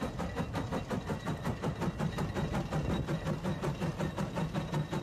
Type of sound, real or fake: real